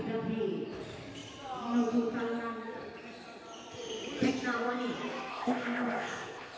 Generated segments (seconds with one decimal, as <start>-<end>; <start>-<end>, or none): 5.3-6.6